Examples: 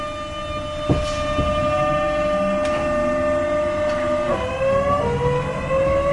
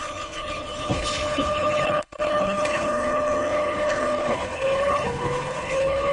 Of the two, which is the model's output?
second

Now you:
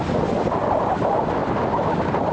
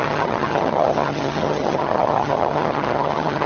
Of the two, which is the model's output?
second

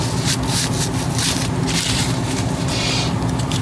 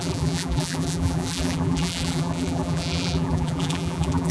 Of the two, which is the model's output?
second